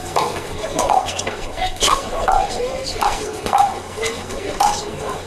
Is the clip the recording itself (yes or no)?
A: no